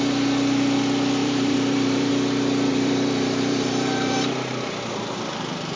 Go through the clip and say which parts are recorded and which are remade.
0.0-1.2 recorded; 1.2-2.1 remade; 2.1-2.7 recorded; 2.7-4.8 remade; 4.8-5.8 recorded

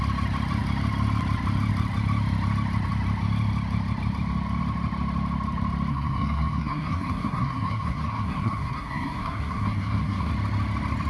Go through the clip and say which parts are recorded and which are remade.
0.0-5.9 recorded; 5.9-10.3 remade; 10.3-11.1 recorded

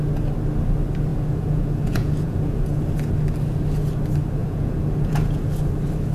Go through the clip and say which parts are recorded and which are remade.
0.0-1.1 recorded; 1.1-2.8 remade; 2.8-4.4 recorded; 4.4-5.4 remade; 5.4-6.1 recorded

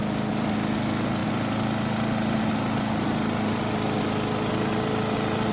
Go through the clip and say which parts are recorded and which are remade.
0.0-5.5 recorded